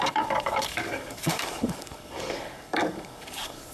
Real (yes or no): no